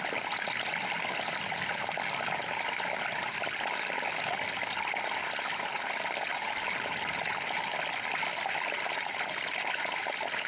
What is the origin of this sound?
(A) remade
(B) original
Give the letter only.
B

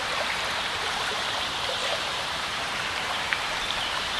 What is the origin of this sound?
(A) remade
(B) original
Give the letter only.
A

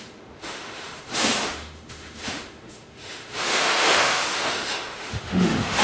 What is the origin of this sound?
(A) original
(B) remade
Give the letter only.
B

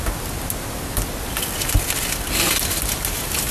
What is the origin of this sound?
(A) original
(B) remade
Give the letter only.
A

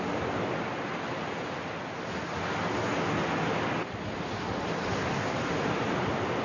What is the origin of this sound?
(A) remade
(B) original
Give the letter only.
B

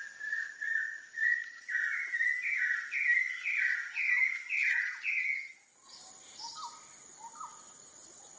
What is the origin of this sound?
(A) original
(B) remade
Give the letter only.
A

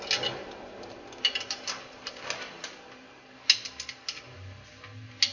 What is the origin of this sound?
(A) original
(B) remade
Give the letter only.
A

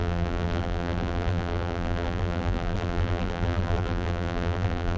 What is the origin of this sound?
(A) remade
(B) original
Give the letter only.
A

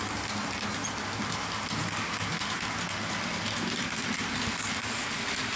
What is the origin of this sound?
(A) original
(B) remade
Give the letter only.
A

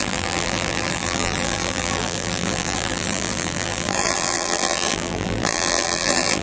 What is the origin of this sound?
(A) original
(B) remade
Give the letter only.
B